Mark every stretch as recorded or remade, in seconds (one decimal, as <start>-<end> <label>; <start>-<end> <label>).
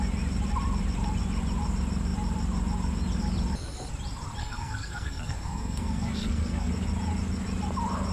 0.0-4.4 recorded; 4.4-6.7 remade; 6.7-8.1 recorded